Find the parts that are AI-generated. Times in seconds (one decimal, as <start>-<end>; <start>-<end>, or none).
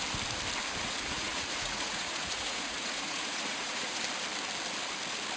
0.8-4.0